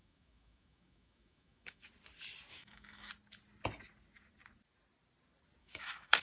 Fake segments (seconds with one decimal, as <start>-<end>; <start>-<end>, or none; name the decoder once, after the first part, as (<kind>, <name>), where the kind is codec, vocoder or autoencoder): 0.0-1.9 (autoencoder, DAC-VAE); 2.5-3.1; 5.6-6.2